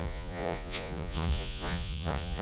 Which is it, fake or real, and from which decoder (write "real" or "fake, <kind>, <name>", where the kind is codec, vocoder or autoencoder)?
fake, vocoder, Vocos